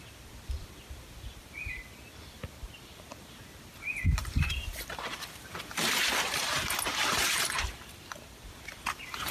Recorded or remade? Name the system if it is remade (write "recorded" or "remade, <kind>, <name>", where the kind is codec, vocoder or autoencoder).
remade, vocoder, BigVGAN v2